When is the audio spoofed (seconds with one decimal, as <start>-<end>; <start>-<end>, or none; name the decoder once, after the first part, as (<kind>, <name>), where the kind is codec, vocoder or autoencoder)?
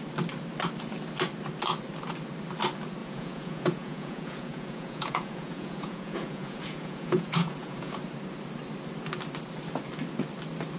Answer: 3.0-8.0 (vocoder, Vocos)